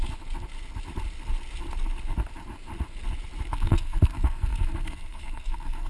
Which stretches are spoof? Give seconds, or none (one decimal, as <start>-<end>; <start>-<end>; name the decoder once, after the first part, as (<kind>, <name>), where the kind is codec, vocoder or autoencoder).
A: 3.5-5.9 (codec, SNAC)